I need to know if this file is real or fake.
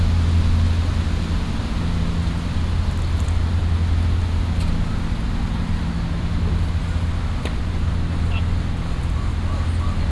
real